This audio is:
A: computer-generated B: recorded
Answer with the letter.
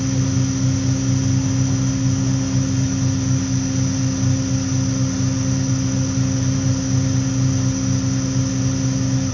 B